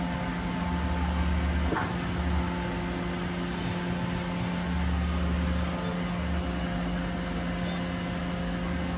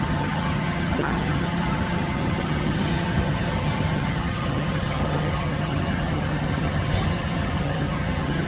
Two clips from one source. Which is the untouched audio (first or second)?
first